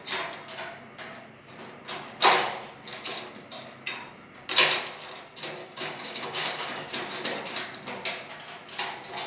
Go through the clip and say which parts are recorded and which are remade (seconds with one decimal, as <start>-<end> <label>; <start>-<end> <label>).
0.0-5.6 recorded; 5.6-6.9 remade; 6.9-9.3 recorded